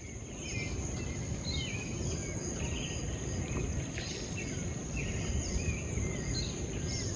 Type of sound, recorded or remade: recorded